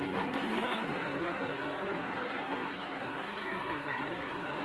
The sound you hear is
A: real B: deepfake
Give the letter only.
B